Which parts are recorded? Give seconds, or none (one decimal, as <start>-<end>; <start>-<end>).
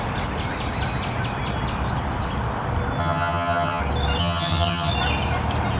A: 0.0-3.0; 3.8-4.2; 4.9-5.8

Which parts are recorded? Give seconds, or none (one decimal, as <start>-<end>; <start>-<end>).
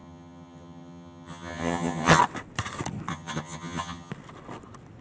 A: 2.2-3.1; 4.1-5.0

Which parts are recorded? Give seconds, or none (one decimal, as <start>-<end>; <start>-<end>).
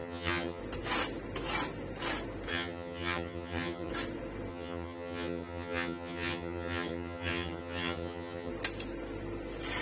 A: 0.6-2.5; 3.9-4.5; 8.5-9.8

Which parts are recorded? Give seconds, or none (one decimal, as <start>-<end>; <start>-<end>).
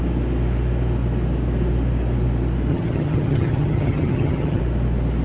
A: 0.0-2.7; 4.6-5.2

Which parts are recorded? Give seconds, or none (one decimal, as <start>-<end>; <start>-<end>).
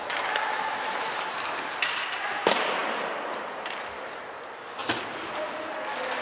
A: 0.0-6.2